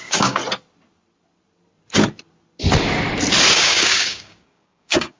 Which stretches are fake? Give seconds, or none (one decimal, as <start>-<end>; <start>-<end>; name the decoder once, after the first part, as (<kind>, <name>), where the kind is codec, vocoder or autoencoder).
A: 0.0-0.4 (codec, DAC); 3.5-5.2